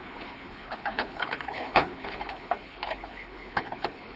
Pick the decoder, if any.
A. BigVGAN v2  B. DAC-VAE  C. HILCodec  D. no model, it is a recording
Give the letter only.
C